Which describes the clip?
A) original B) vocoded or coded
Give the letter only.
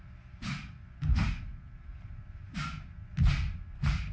A